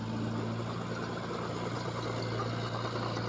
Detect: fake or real real